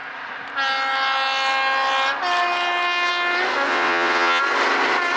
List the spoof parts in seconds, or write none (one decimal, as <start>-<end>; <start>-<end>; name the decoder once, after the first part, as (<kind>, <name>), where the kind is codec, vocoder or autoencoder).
3.7-4.4 (vocoder, WaveNeXt)